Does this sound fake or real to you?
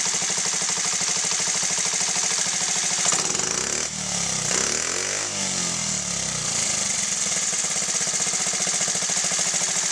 real